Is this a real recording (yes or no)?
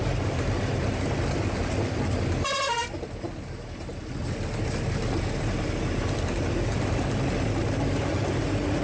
yes